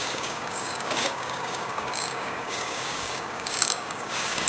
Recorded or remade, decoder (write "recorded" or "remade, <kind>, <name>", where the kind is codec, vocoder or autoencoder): remade, codec, DAC